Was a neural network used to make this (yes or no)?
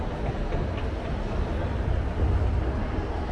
no